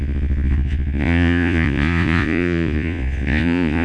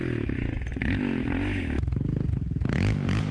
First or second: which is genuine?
second